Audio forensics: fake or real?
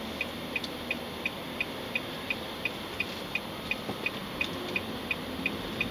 real